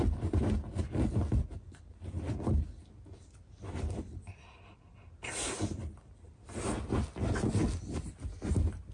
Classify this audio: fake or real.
real